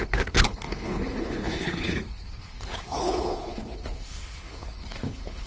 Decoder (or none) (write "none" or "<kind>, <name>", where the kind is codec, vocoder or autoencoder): codec, HILCodec